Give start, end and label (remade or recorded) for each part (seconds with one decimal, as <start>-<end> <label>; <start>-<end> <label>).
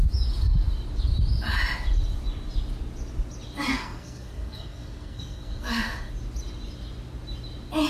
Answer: 0.0-3.7 recorded; 3.7-6.1 remade; 6.1-7.9 recorded